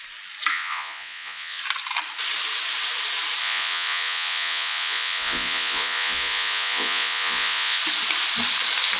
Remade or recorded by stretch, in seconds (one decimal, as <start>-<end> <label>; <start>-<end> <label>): 0.0-0.5 recorded; 0.5-1.6 remade; 1.6-3.4 recorded; 3.4-7.8 remade; 7.8-9.0 recorded